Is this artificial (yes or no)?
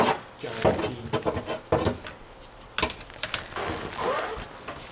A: no